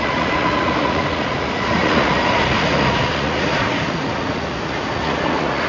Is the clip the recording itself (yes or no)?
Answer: no